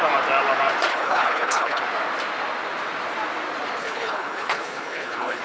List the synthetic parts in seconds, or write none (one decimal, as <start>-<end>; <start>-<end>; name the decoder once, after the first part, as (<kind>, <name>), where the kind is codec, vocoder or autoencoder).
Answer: 0.9-1.8 (codec, HILCodec); 3.8-5.4